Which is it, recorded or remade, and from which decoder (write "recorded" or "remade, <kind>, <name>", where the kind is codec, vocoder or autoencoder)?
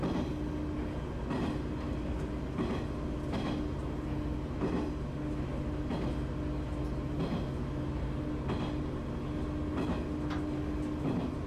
recorded